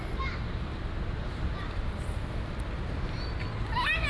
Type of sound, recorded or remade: recorded